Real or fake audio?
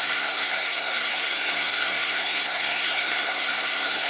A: fake